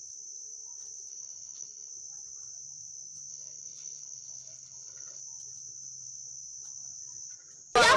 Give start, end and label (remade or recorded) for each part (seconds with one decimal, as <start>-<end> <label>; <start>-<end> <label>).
0.0-1.1 recorded; 1.1-1.9 remade; 1.9-3.3 recorded; 3.3-5.2 remade; 5.2-8.0 recorded